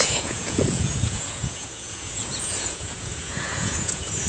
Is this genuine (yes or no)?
no